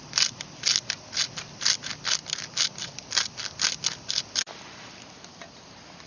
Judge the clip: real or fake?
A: real